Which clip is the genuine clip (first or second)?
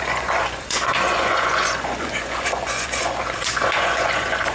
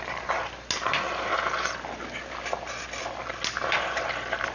second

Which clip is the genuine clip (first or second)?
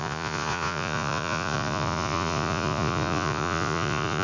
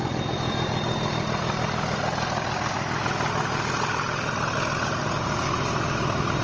second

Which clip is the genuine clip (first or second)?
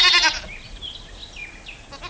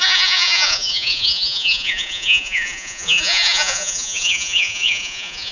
first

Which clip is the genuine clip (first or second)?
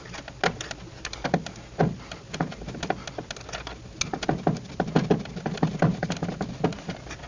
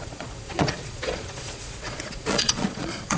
first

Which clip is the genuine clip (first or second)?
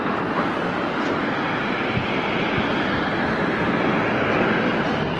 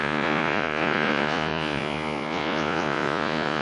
first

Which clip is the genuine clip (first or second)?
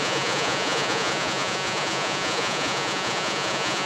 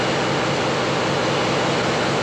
second